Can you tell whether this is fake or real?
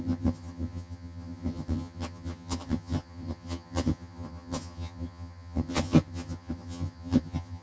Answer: fake